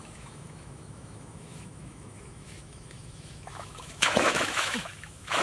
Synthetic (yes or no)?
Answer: yes